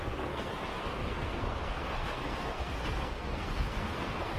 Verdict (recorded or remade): remade